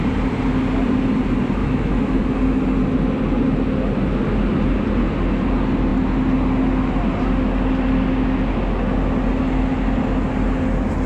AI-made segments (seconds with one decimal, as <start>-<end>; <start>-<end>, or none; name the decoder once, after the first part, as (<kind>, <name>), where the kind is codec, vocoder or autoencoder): 1.6-2.2 (autoencoder, DAC-VAE)